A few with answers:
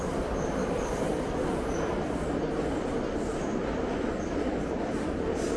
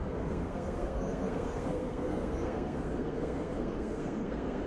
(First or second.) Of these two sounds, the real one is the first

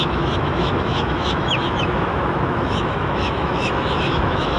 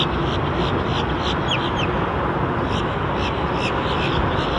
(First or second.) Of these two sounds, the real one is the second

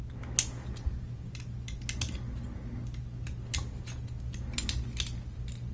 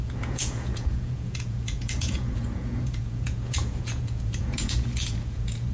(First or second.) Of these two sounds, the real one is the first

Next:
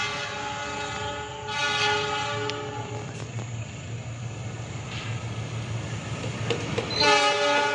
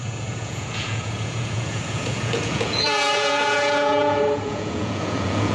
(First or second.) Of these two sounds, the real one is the first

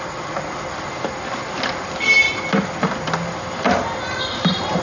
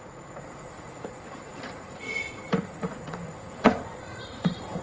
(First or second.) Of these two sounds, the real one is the first